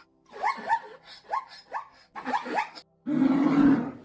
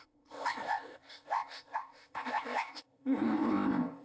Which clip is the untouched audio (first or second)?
first